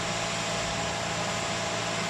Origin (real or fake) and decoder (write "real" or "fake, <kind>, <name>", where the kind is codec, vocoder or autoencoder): real